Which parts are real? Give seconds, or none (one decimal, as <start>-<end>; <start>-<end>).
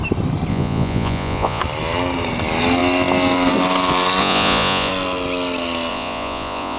0.0-0.5; 1.6-4.2; 4.9-5.9